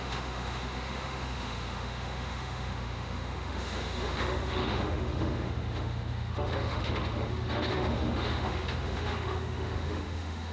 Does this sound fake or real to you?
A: fake